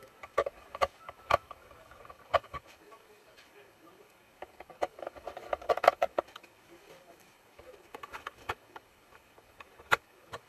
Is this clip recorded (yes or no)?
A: no